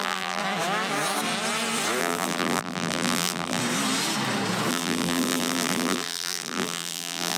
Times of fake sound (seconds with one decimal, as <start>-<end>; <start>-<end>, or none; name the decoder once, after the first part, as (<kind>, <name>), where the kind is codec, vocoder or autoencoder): 0.0-0.4 (vocoder, BigVGAN v2); 2.0-3.6; 4.7-7.4